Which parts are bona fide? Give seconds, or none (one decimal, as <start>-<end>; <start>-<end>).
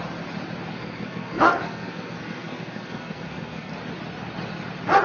0.0-0.7; 3.7-5.0